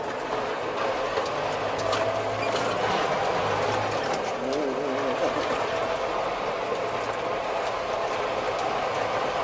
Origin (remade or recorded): recorded